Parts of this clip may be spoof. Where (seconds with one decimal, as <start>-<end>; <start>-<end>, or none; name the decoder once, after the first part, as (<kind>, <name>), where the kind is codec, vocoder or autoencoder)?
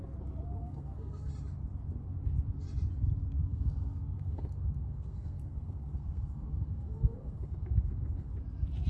0.6-1.3 (codec, SNAC); 3.4-8.3